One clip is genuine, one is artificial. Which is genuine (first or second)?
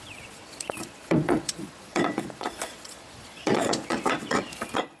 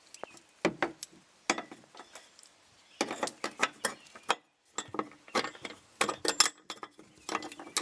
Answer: second